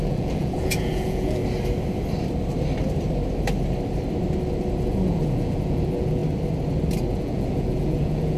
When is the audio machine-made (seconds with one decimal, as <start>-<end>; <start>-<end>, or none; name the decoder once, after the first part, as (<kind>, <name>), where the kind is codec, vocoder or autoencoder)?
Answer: 0.0-1.4 (vocoder, Vocos); 4.8-6.2; 7.1-8.4